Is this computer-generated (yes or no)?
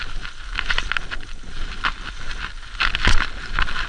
no